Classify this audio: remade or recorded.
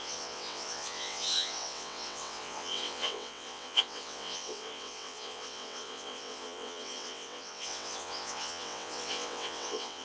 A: remade